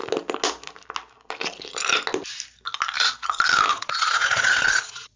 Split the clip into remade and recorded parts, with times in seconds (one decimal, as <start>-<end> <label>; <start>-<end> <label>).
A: 0.0-3.7 recorded; 3.7-5.2 remade